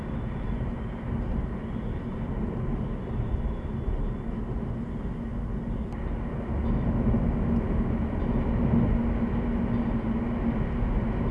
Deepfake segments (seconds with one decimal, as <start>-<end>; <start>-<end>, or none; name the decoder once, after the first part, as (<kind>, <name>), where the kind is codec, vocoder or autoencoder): none